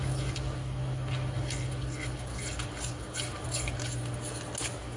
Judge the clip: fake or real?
real